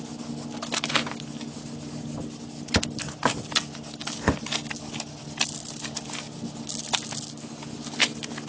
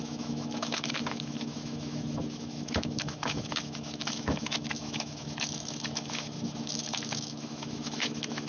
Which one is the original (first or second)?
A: first